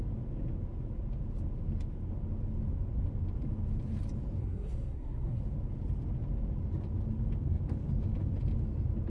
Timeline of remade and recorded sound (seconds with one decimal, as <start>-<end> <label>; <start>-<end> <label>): 0.0-4.4 recorded; 4.4-5.4 remade; 5.4-9.1 recorded